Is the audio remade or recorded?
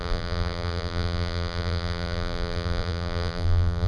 remade